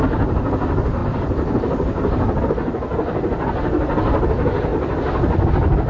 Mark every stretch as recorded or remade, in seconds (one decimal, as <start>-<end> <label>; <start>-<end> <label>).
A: 0.0-5.9 recorded